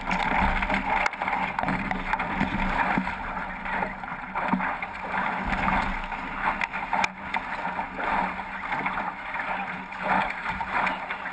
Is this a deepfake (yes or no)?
no